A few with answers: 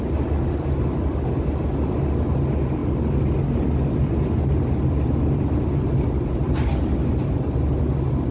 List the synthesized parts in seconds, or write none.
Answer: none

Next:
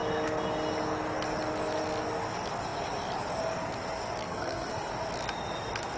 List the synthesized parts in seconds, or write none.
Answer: 4.2-4.9 (codec, SNAC)

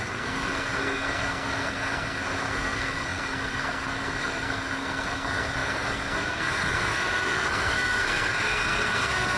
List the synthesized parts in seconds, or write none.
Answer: 0.0-9.4 (codec, SNAC)

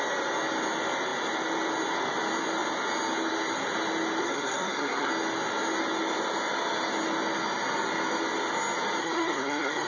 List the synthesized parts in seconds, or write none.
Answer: 4.2-5.1 (codec, SNAC); 9.0-9.9

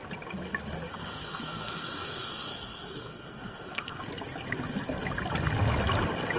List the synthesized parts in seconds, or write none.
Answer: 0.9-4.0 (codec, SNAC)